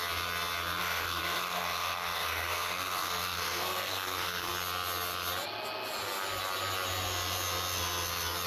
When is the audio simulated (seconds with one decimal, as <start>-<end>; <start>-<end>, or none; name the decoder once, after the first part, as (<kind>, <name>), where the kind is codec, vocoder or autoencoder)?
0.8-4.5 (codec, SNAC)